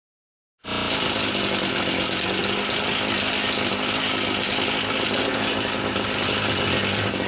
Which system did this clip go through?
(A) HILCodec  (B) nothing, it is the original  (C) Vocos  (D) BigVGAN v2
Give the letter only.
B